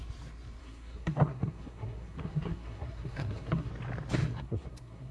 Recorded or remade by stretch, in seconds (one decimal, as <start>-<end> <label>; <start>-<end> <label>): 0.0-0.6 recorded; 0.6-3.7 remade; 3.7-4.2 recorded; 4.2-5.1 remade

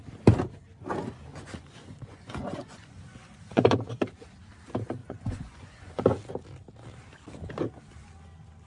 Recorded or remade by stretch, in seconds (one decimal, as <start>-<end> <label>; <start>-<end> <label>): 0.0-1.3 recorded; 1.3-4.0 remade; 4.0-5.0 recorded; 5.0-6.0 remade; 6.0-8.7 recorded